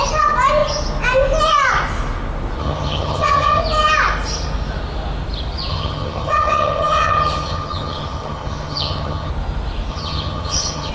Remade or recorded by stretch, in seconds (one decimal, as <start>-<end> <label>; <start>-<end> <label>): 0.0-2.6 recorded; 2.6-3.6 remade; 3.6-5.7 recorded; 5.7-9.3 remade; 9.3-9.9 recorded; 9.9-10.9 remade